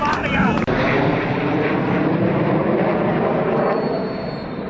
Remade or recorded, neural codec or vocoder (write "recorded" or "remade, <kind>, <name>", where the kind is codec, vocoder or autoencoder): recorded